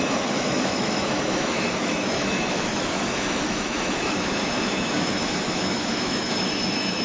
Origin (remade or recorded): remade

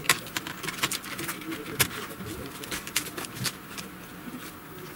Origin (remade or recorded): recorded